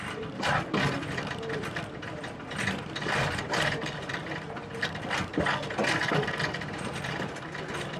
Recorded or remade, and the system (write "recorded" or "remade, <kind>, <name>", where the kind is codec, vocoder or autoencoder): recorded